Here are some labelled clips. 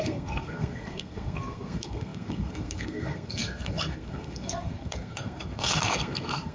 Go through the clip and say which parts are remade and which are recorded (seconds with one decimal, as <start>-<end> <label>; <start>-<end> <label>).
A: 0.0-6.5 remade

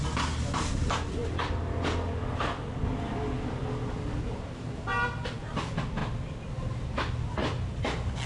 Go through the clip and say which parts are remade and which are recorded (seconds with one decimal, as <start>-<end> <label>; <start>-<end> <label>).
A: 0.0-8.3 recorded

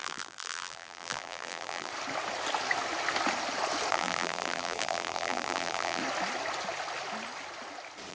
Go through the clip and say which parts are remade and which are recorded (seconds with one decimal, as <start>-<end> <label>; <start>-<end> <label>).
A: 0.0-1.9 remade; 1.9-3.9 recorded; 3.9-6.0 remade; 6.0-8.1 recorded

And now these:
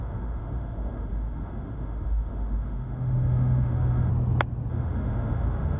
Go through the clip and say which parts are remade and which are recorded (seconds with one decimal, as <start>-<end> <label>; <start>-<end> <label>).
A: 0.0-4.1 remade; 4.1-4.7 recorded; 4.7-5.8 remade

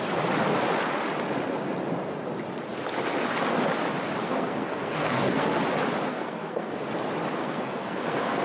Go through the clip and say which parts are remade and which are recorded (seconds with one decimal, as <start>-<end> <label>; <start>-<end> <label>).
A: 0.0-4.2 recorded; 4.2-5.6 remade; 5.6-6.1 recorded; 6.1-6.7 remade; 6.7-7.4 recorded; 7.4-8.4 remade

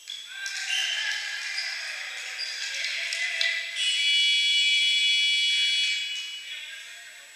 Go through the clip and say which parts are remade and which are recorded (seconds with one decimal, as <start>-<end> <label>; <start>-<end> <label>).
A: 0.0-0.8 recorded; 0.8-2.4 remade; 2.4-4.5 recorded; 4.5-5.1 remade; 5.1-7.4 recorded

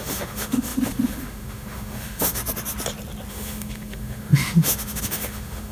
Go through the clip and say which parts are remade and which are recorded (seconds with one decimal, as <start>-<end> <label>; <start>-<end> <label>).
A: 0.0-2.4 remade; 2.4-3.3 recorded; 3.3-5.7 remade

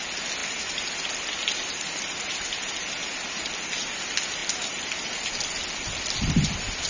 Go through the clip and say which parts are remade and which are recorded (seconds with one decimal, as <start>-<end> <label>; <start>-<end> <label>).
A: 0.0-6.9 recorded